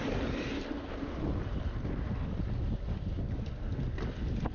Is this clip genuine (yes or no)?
yes